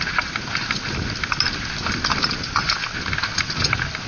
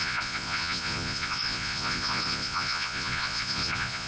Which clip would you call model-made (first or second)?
second